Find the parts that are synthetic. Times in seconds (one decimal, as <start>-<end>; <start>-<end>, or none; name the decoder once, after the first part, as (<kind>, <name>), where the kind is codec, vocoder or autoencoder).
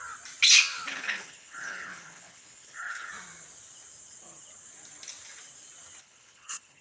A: 0.9-3.1 (codec, HILCodec); 6.0-6.8